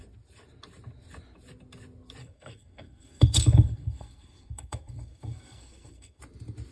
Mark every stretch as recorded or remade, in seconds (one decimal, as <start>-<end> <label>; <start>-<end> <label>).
0.0-2.2 recorded; 2.2-6.2 remade; 6.2-6.7 recorded